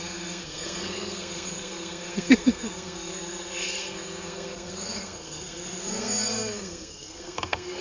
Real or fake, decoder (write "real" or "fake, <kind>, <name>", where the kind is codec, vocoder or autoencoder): fake, codec, SNAC